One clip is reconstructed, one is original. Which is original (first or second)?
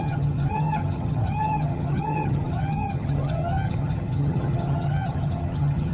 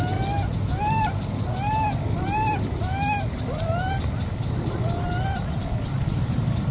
second